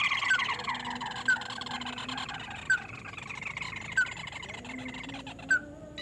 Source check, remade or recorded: recorded